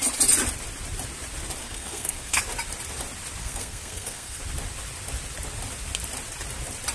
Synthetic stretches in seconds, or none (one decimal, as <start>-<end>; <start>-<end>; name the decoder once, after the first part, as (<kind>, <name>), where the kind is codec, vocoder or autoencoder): 1.6-2.4 (codec, SNAC); 3.4-4.4